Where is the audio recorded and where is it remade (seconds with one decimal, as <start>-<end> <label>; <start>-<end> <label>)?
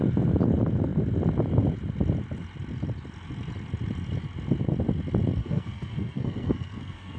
0.0-5.4 recorded; 5.4-7.2 remade